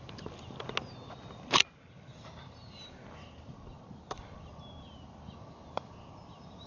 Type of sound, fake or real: real